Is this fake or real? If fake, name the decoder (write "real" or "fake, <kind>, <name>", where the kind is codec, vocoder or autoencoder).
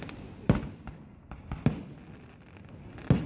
real